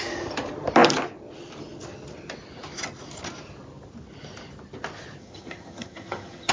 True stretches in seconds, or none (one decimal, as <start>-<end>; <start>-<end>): 0.0-5.2